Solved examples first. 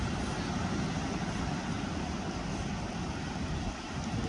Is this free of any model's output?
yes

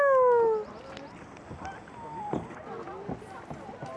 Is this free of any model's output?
yes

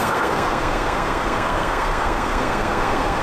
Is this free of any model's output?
no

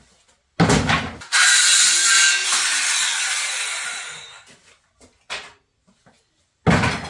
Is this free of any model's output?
yes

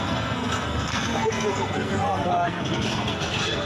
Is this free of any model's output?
no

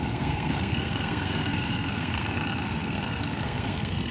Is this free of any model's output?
no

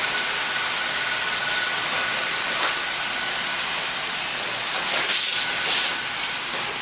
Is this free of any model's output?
yes